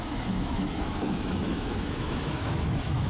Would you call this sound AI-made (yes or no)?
yes